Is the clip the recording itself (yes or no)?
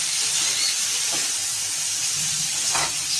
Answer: yes